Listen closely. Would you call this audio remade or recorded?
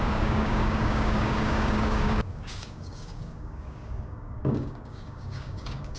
remade